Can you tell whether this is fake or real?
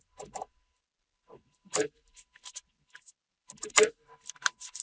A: real